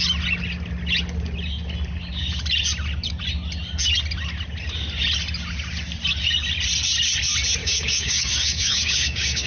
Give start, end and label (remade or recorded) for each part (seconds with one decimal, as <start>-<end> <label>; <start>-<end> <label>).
0.0-7.6 recorded; 7.6-9.5 remade